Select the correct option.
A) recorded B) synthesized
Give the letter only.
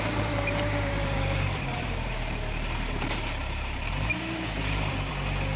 B